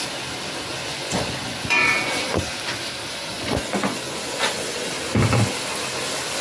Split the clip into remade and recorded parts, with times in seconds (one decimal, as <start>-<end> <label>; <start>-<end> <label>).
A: 0.0-0.7 recorded; 0.7-2.4 remade; 2.4-3.1 recorded; 3.1-4.9 remade; 4.9-6.4 recorded